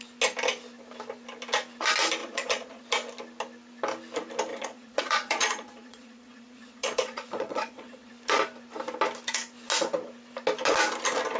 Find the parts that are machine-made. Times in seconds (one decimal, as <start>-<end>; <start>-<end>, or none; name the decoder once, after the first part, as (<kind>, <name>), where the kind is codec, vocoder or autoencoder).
2.2-2.8 (vocoder, Vocos); 4.5-8.1